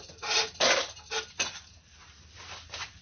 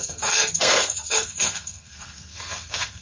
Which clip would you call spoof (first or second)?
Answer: second